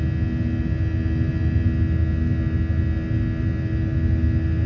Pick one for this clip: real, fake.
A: real